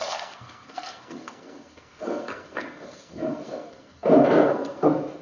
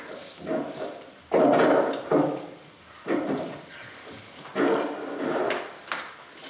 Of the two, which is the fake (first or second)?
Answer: first